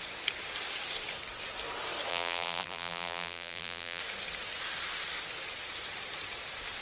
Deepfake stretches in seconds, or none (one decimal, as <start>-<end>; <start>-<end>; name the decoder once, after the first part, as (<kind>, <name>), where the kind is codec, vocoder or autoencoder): 2.1-4.0 (vocoder, BigVGAN v2)